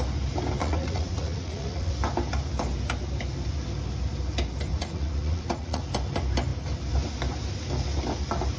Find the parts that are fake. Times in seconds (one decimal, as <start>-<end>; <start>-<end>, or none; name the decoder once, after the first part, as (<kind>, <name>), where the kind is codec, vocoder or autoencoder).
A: 0.6-1.9 (vocoder, Vocos); 4.7-5.9